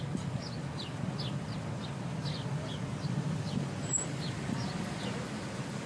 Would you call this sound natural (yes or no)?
yes